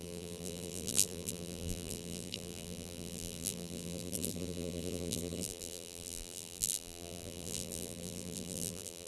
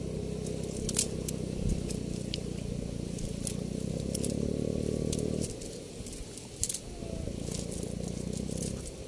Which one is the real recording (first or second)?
second